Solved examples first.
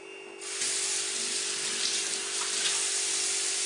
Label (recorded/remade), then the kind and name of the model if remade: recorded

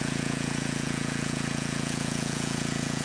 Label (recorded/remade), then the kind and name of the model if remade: remade, vocoder, Vocos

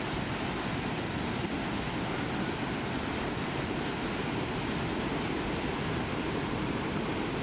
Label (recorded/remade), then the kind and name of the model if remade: recorded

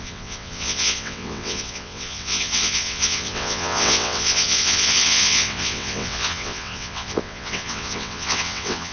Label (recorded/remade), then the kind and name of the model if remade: remade, vocoder, WaveNeXt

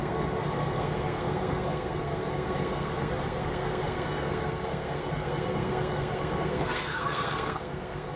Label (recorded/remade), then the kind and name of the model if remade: remade, codec, SNAC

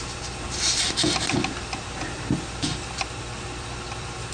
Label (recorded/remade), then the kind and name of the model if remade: remade, vocoder, BigVGAN v2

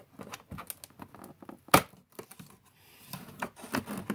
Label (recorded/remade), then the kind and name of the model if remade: recorded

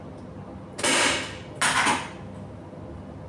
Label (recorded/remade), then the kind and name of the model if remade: recorded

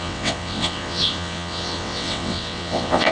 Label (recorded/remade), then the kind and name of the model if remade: remade, vocoder, WaveNeXt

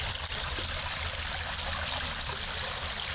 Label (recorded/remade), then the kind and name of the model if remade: recorded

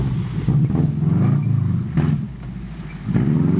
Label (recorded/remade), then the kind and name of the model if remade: recorded